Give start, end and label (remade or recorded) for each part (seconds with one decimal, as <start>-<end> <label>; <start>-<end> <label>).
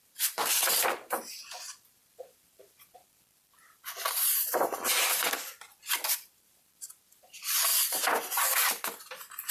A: 0.0-9.5 remade